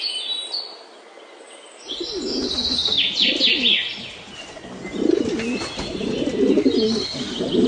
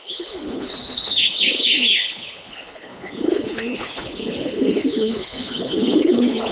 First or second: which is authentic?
first